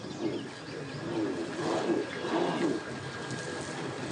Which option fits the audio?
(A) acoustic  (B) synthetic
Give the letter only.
A